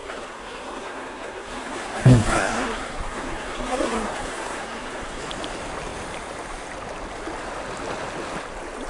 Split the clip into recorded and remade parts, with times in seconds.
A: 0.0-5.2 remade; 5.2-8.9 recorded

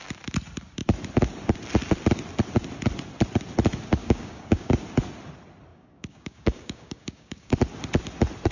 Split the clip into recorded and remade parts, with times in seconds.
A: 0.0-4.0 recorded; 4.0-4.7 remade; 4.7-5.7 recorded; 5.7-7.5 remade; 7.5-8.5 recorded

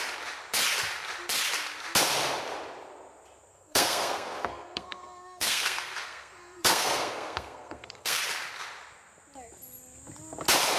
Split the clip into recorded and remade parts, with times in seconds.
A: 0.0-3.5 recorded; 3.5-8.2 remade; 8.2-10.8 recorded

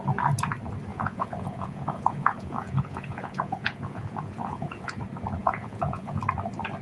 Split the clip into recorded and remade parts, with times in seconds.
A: 0.0-0.9 recorded; 0.9-5.0 remade; 5.0-5.4 recorded; 5.4-6.2 remade; 6.2-6.8 recorded

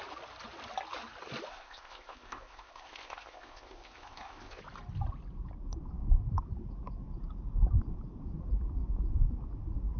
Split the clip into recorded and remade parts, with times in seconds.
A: 0.0-1.5 recorded; 1.5-4.6 remade; 4.6-10.0 recorded

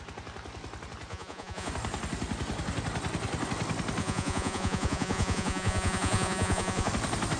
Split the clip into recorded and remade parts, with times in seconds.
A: 0.0-1.1 recorded; 1.1-1.7 remade; 1.7-4.0 recorded; 4.0-6.9 remade; 6.9-7.4 recorded